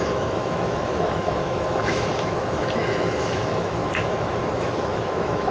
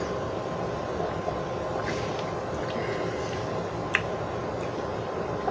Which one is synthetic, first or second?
first